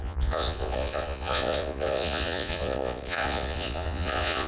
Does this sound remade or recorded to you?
remade